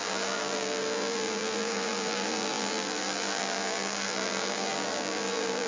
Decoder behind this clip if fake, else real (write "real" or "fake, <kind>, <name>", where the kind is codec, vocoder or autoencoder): fake, vocoder, BigVGAN v2